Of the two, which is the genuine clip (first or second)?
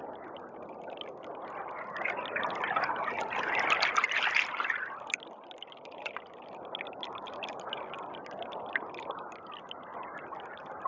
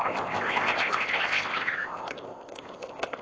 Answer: first